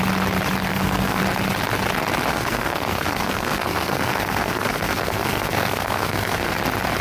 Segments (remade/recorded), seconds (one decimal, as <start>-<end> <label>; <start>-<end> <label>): 0.0-0.7 recorded; 0.7-1.2 remade; 1.2-2.3 recorded; 2.3-6.5 remade; 6.5-7.0 recorded